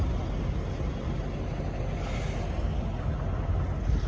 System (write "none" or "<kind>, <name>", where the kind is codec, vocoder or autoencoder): none